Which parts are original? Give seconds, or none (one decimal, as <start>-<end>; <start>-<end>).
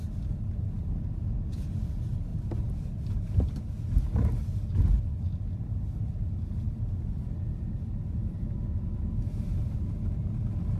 0.0-8.2; 10.3-10.8